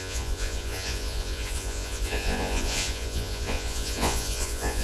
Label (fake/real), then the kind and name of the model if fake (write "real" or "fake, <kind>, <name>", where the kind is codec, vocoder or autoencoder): fake, vocoder, Vocos